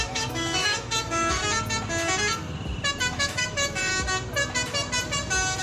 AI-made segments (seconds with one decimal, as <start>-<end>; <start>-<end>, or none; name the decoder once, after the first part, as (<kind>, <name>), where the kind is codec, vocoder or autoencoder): 0.0-1.4 (autoencoder, DAC-VAE); 3.0-3.9